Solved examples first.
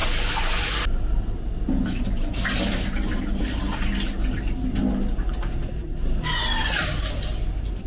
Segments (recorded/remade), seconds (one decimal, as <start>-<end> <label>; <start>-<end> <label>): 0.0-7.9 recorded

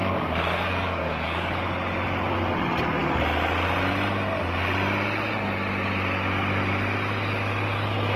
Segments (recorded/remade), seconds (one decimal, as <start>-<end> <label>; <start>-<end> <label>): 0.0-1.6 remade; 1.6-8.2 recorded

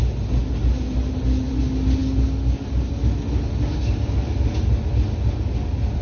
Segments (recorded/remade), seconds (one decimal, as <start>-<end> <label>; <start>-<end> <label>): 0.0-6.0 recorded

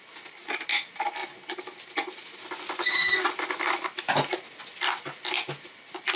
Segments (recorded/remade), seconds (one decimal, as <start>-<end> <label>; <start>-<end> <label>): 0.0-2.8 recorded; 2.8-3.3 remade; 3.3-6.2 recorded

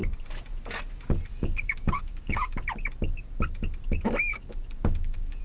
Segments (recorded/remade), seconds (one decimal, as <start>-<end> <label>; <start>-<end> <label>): 0.0-1.3 recorded; 1.3-2.7 remade; 2.7-4.3 recorded; 4.3-5.4 remade